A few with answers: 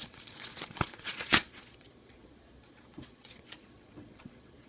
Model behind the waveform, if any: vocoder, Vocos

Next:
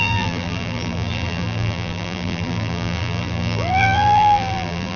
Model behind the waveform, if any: vocoder, BigVGAN v2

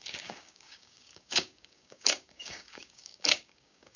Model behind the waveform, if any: codec, DAC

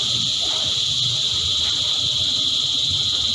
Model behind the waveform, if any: none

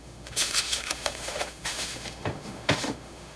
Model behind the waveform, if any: autoencoder, DAC-VAE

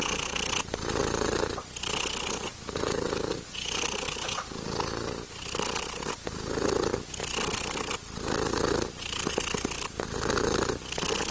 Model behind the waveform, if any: none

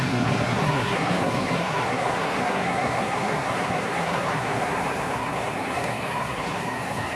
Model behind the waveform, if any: codec, SNAC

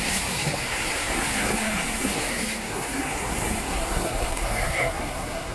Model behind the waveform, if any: codec, SNAC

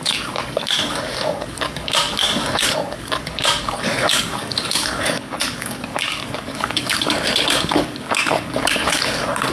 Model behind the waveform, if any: codec, DAC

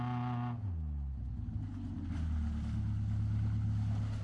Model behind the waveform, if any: none